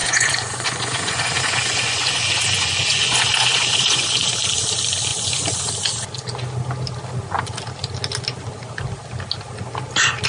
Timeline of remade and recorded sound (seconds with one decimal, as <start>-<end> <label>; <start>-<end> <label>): 0.0-4.3 remade; 4.3-5.1 recorded; 5.1-5.6 remade; 5.6-10.3 recorded